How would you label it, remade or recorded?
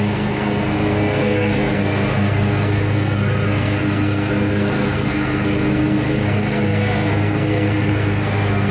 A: remade